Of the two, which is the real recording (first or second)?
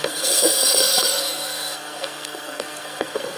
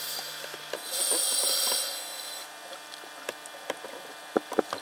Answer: second